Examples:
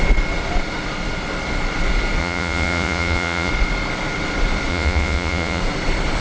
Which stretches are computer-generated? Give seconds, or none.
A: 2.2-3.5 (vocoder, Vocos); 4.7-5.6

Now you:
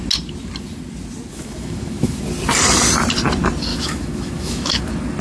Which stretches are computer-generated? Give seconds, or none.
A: 1.3-2.2 (autoencoder, DAC-VAE); 3.7-4.8

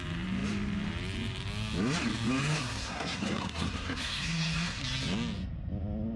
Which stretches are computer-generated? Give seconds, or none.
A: 2.4-4.8 (codec, SNAC)

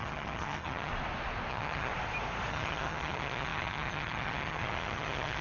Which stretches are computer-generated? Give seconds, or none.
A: 0.0-0.9 (vocoder, HiFi-GAN); 1.5-1.9; 2.5-5.4

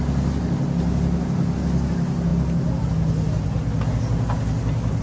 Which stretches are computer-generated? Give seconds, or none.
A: none

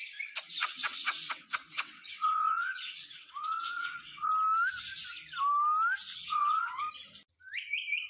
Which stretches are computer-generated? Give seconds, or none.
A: 0.6-4.3 (vocoder, WaveNeXt); 6.1-6.8

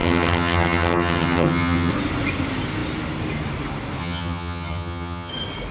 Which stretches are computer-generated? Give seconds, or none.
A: 0.0-1.9 (vocoder, HiFi-GAN); 4.0-5.3